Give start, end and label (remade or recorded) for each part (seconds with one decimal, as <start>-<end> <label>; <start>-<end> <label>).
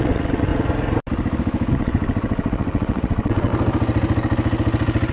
0.0-0.5 remade; 0.5-1.7 recorded; 1.7-3.5 remade; 3.5-5.1 recorded